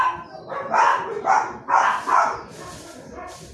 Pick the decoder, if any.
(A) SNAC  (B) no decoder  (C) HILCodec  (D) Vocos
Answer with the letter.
B